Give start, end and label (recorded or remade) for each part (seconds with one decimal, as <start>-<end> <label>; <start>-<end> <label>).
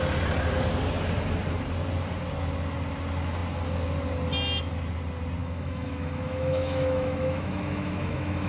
0.0-5.4 recorded; 5.4-8.5 remade